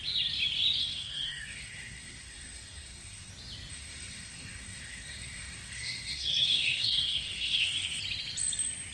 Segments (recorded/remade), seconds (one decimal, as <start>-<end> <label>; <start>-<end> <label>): 0.0-0.8 recorded; 0.8-3.3 remade; 3.3-3.7 recorded; 3.7-8.0 remade; 8.0-8.9 recorded